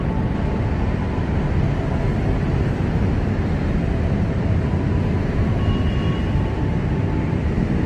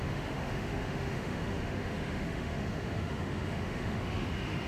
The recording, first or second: first